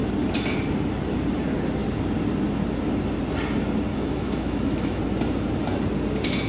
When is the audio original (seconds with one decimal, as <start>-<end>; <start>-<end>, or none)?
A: 0.0-3.9; 5.0-6.5